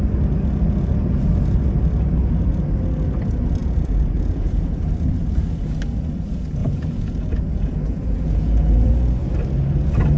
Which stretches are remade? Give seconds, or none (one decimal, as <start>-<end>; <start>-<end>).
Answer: 3.6-4.8; 6.6-8.9